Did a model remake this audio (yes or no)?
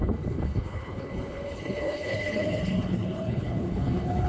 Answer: yes